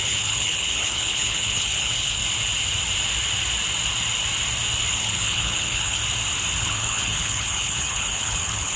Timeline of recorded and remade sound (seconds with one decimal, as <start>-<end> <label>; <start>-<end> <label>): 0.0-2.2 remade; 2.2-4.9 recorded; 4.9-6.0 remade; 6.0-6.6 recorded; 6.6-8.8 remade